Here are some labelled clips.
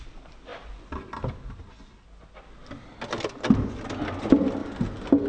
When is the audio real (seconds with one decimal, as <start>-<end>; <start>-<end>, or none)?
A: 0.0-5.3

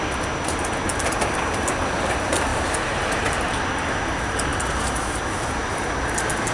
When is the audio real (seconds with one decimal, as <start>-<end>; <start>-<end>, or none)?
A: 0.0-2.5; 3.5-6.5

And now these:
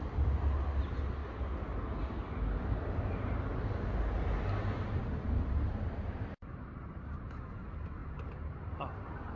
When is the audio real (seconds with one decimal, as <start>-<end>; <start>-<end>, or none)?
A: 1.2-5.0

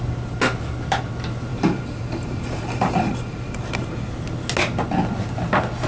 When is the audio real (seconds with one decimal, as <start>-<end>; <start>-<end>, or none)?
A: 0.0-1.5; 4.1-5.9

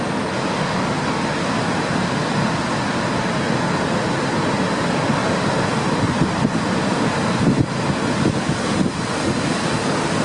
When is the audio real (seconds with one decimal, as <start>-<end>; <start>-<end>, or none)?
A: 0.0-5.2; 7.8-10.2

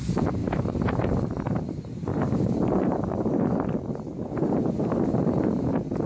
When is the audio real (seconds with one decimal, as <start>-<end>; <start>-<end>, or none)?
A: none